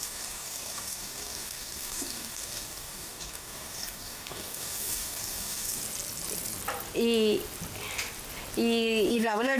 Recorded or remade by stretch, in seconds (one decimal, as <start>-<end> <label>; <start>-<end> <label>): 0.0-5.8 remade; 5.8-9.1 recorded; 9.1-9.6 remade